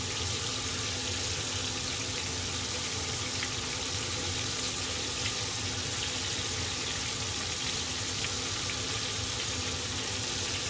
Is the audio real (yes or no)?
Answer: yes